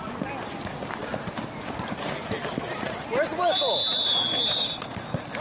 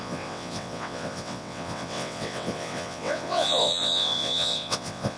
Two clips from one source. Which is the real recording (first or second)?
first